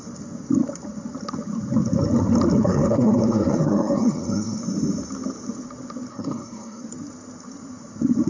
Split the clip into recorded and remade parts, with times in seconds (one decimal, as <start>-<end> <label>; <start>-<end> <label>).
0.0-2.6 recorded; 2.6-4.6 remade; 4.6-6.1 recorded; 6.1-6.8 remade; 6.8-8.3 recorded